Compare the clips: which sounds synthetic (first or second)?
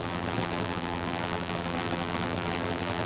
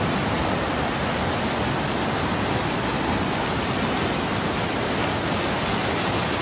first